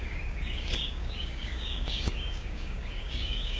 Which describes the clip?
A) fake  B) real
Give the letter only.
A